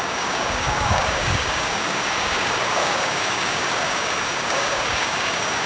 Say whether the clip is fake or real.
fake